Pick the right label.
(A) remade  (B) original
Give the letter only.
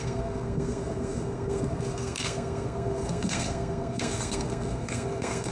A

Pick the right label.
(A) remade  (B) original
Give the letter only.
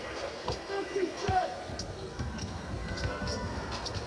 A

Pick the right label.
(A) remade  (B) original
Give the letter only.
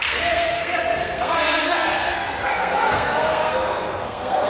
A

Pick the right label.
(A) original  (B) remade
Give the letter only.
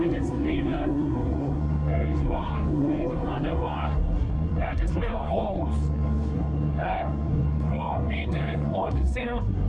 B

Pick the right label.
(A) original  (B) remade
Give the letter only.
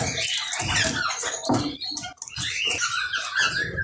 A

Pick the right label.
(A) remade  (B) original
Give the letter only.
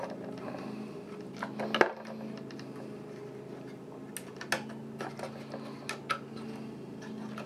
B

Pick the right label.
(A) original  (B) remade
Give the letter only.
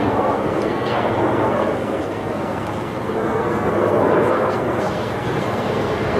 B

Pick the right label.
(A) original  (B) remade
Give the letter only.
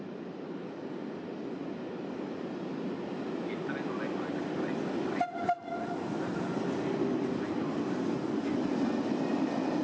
A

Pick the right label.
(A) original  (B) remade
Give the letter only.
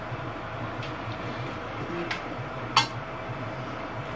A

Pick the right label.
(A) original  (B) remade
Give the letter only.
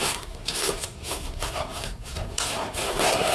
B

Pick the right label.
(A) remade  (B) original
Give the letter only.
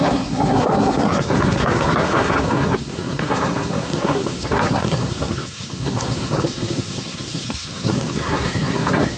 A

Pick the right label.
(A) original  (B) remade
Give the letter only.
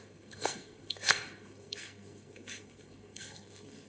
B